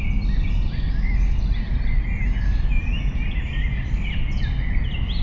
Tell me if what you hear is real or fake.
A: real